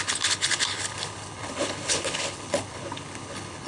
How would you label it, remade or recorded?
remade